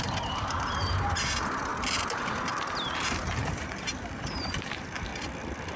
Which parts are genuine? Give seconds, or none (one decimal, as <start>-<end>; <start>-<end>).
1.7-2.7; 5.1-5.8